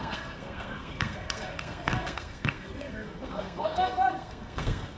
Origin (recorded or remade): remade